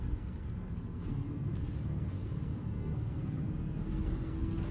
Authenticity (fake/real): fake